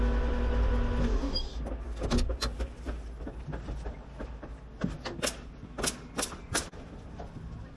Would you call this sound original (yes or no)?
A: yes